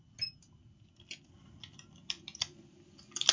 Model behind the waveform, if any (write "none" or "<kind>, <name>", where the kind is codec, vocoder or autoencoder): none